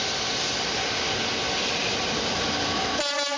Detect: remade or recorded recorded